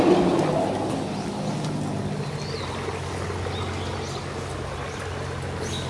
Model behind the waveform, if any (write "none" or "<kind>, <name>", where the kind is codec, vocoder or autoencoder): none